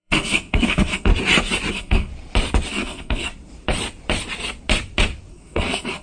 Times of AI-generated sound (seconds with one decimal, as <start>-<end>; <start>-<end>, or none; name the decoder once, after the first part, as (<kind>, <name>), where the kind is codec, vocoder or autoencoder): 0.0-1.1 (codec, SNAC); 1.7-2.1; 2.7-3.3; 5.3-6.0